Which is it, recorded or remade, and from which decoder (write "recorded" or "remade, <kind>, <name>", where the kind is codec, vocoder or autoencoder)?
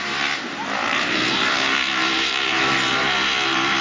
remade, vocoder, BigVGAN v2